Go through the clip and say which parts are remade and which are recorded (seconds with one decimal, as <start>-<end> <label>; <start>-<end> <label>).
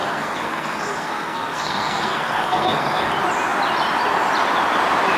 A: 0.0-3.1 remade; 3.1-5.2 recorded